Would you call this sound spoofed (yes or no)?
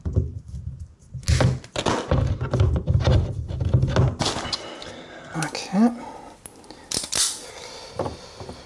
no